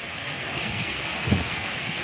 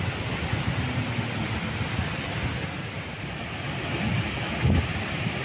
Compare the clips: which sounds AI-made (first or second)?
first